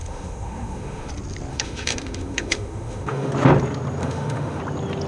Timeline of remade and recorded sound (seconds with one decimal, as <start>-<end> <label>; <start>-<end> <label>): 0.0-1.1 remade; 1.1-1.5 recorded; 1.5-3.3 remade; 3.3-4.0 recorded; 4.0-4.6 remade; 4.6-5.1 recorded